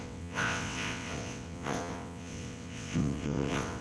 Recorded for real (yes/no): no